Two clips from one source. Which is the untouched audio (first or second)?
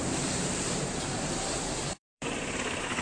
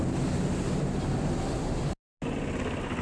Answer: second